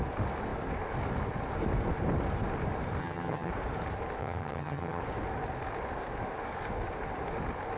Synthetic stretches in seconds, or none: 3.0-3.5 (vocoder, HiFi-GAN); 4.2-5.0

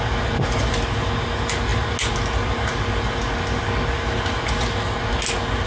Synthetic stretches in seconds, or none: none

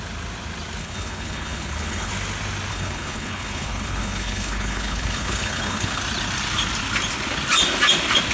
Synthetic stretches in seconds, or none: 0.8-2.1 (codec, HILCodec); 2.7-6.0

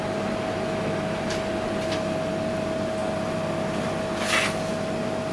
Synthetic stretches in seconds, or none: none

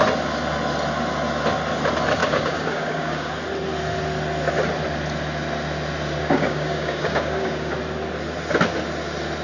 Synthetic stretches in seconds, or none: 2.2-3.3 (codec, DAC); 6.2-7.7